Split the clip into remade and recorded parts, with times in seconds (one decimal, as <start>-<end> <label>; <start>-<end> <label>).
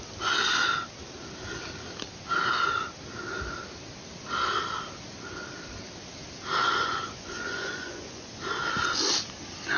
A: 0.0-6.6 recorded; 6.6-8.3 remade; 8.3-9.8 recorded